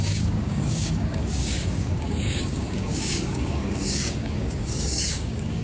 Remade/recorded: remade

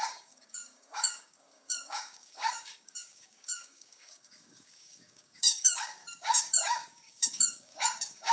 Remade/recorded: remade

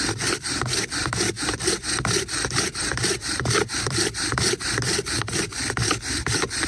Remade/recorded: recorded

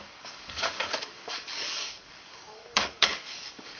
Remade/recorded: remade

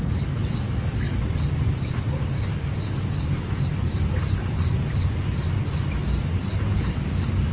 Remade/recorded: recorded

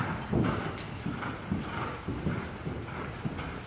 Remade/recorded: recorded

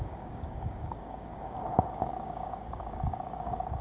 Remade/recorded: remade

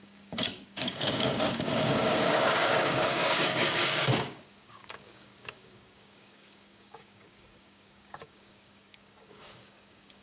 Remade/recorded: remade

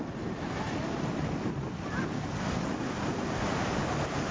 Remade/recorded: recorded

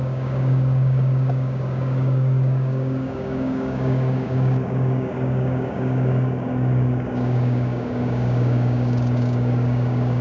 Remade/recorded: remade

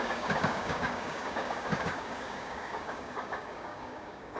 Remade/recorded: remade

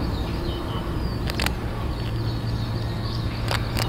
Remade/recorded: recorded